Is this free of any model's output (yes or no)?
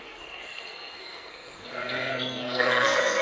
no